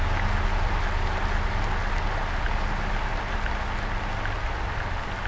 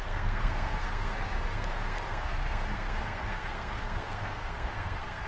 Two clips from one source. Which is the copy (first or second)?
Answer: second